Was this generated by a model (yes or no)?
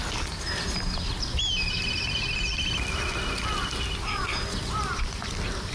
no